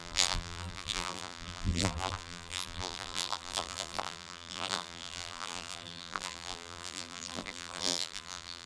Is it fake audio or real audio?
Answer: fake